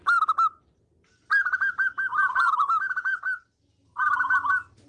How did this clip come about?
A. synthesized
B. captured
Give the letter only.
B